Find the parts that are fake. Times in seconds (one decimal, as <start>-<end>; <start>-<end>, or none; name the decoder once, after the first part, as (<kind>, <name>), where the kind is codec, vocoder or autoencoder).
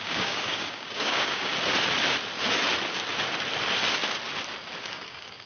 0.0-1.5 (codec, DAC); 4.8-5.5